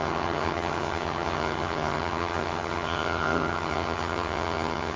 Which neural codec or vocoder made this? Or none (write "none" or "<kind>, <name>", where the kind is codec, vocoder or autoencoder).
vocoder, HiFi-GAN